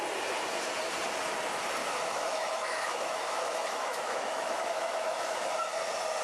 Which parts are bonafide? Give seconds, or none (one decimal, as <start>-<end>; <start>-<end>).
0.0-1.8; 5.5-6.2